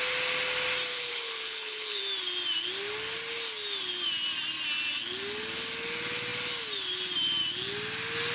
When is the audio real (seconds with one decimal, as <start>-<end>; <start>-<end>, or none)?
0.0-0.9; 2.0-8.3